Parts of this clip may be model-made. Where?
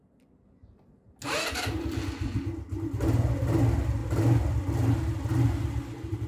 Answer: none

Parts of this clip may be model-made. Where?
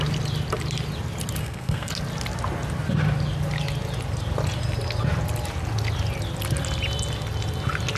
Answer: 1.4-1.9 (codec, SNAC)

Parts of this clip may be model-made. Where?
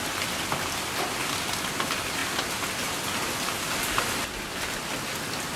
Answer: none